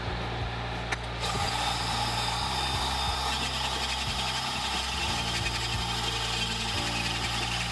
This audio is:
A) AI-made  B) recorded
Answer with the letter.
B